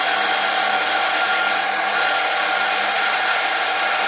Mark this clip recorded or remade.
recorded